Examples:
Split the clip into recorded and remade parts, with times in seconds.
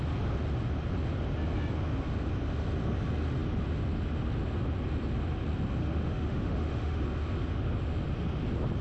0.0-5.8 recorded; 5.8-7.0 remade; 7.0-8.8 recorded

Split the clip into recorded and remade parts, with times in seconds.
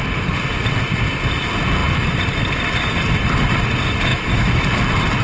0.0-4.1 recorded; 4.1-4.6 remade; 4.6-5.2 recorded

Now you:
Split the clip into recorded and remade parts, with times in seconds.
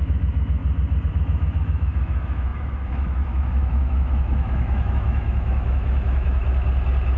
0.0-0.6 remade; 0.6-1.1 recorded; 1.1-6.4 remade; 6.4-7.2 recorded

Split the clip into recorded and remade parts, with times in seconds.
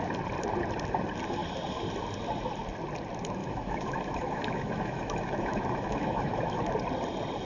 0.0-3.4 recorded; 3.4-6.6 remade; 6.6-7.4 recorded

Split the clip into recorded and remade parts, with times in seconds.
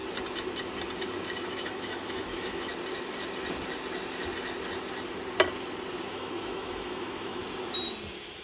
0.0-1.5 recorded; 1.5-2.7 remade; 2.7-6.1 recorded; 6.1-7.4 remade; 7.4-8.4 recorded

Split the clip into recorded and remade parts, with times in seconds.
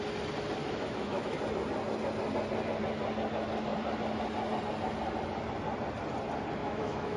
0.0-0.6 recorded; 0.6-1.4 remade; 1.4-6.6 recorded; 6.6-7.2 remade